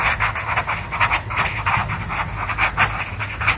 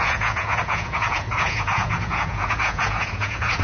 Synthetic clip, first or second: second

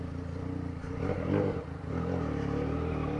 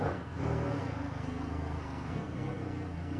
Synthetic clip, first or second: second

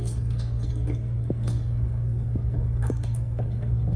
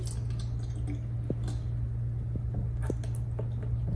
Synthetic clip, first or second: first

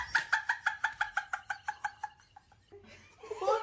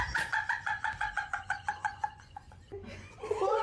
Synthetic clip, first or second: second